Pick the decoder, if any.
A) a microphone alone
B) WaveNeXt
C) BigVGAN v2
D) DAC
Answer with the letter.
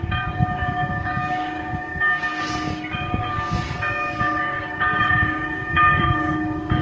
D